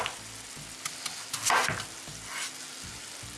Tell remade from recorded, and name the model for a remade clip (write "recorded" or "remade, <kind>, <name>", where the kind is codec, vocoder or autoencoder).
recorded